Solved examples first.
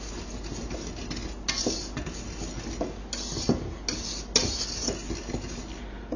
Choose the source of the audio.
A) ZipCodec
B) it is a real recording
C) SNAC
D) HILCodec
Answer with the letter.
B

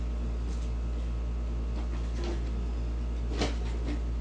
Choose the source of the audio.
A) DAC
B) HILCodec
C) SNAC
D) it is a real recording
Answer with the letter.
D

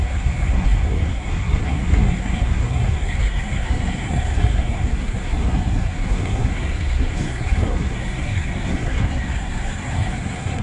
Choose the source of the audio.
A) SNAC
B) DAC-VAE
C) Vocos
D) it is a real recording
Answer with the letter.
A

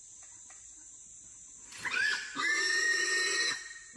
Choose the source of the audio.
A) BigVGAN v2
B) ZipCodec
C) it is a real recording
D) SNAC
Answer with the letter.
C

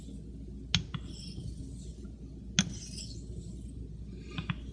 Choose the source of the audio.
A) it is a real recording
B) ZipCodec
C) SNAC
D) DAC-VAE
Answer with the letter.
A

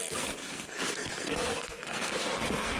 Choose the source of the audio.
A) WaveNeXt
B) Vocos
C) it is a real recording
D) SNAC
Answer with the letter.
D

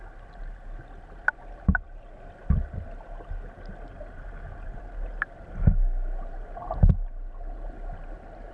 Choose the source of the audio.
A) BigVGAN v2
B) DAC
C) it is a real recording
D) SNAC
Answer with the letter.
C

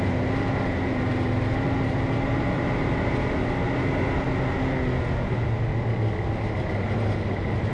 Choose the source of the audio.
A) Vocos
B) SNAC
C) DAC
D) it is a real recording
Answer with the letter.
D